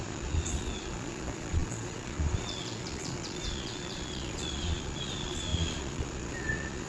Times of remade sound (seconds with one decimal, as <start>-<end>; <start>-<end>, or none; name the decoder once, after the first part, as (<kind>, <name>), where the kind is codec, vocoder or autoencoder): 0.0-6.9 (vocoder, Vocos)